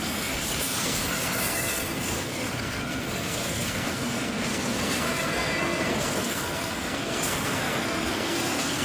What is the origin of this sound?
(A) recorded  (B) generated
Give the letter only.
B